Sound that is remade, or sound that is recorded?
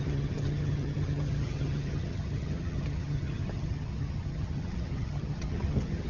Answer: remade